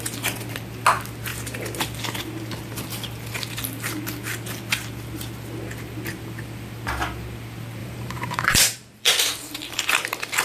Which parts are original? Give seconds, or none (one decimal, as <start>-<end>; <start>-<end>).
0.0-7.8; 9.8-10.4